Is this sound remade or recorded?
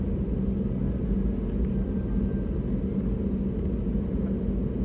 recorded